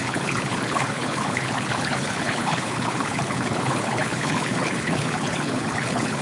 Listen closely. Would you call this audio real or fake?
fake